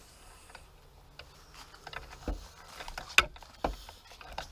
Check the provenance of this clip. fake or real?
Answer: real